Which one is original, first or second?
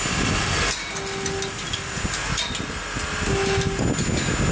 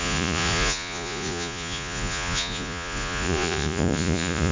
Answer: first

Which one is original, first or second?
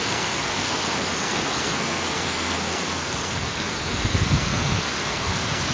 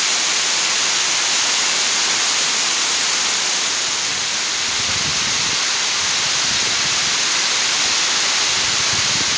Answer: second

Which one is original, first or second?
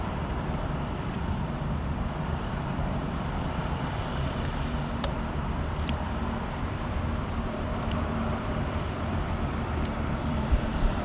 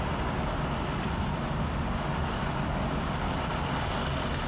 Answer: second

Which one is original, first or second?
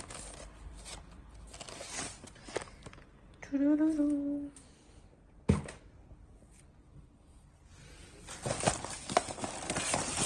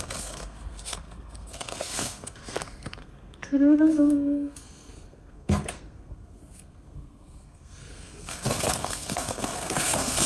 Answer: first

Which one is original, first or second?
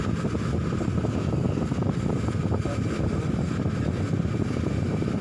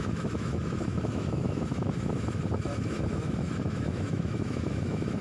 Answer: first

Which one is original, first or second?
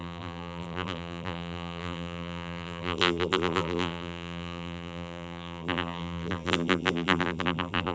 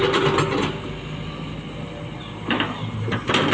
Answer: second